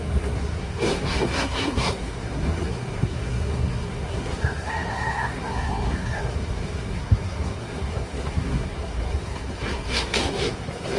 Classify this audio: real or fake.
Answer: fake